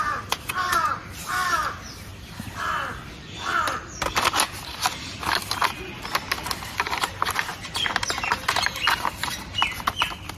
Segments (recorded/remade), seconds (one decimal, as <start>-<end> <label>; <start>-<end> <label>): 0.0-10.4 recorded